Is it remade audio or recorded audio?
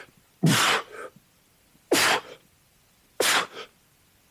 remade